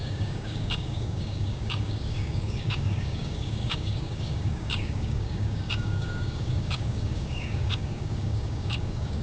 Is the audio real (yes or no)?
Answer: no